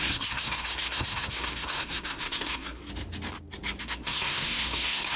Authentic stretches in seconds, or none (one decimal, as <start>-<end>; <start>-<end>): 2.8-3.8